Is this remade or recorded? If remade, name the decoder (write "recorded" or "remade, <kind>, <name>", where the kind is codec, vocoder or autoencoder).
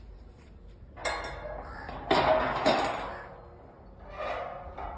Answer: recorded